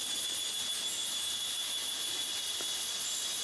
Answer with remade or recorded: recorded